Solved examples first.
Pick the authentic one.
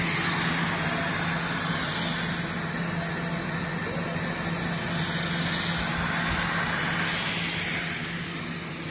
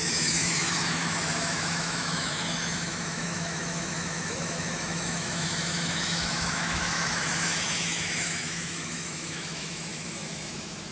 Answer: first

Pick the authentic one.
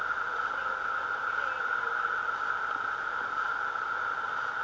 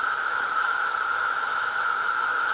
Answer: first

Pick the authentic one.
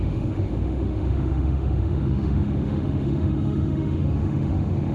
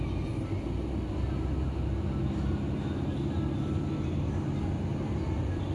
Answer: second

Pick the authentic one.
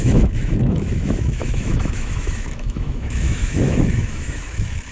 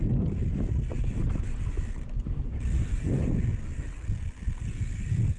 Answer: second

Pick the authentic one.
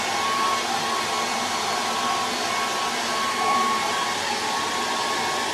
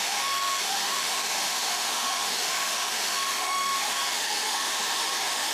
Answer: first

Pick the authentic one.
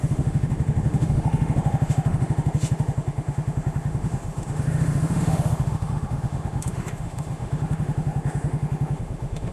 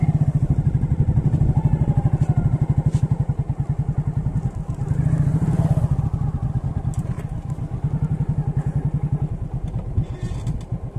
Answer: second